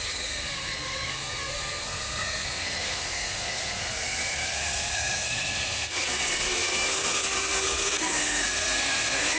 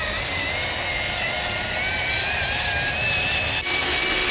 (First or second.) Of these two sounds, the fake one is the first